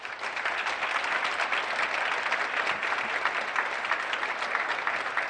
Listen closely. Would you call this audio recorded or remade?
recorded